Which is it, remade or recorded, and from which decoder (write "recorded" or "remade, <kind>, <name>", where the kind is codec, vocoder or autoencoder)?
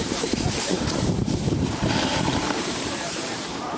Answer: remade, vocoder, BigVGAN v2